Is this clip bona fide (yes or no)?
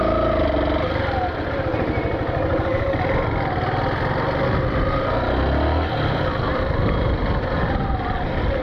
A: yes